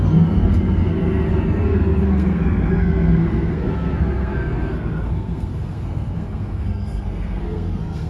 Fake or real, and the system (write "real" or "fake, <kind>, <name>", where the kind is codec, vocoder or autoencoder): fake, codec, SNAC